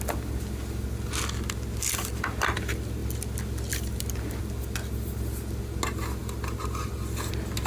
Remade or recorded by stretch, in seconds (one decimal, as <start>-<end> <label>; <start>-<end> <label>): 0.0-7.7 recorded